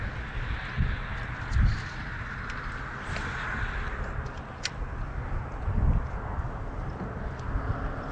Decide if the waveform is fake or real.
real